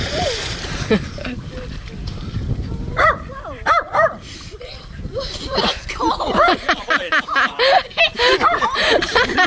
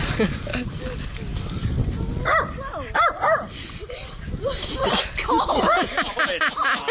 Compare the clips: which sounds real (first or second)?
second